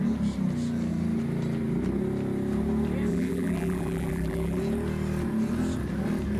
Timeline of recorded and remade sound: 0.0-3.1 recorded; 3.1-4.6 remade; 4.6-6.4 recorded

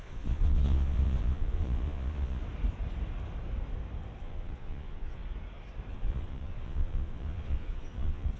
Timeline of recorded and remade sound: 0.0-2.4 remade; 2.4-4.2 recorded; 4.2-5.2 remade; 5.2-5.9 recorded; 5.9-8.4 remade

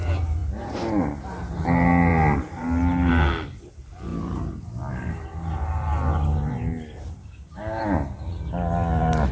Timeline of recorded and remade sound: 0.0-7.2 recorded; 7.2-7.8 remade; 7.8-9.3 recorded